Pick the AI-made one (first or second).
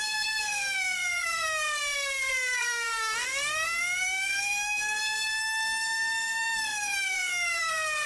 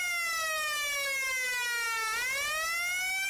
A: first